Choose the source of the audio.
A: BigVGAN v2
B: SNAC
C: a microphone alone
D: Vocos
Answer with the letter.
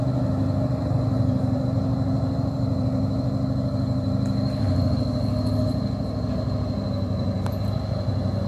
C